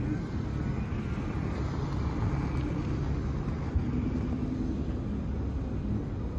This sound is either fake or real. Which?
real